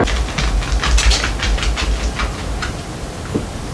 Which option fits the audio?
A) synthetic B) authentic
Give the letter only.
B